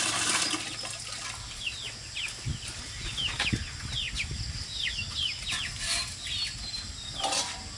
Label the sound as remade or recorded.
recorded